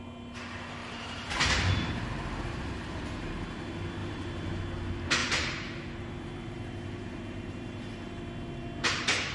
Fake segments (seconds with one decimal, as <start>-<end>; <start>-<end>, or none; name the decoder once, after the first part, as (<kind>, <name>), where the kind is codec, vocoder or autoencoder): 0.8-3.3 (vocoder, BigVGAN v2); 4.0-4.6; 5.2-8.2